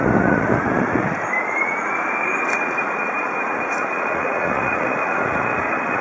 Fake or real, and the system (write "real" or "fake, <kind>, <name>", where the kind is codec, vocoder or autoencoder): fake, vocoder, Vocos